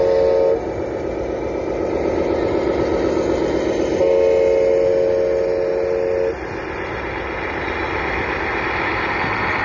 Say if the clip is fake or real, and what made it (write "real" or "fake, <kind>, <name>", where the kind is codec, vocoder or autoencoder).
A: real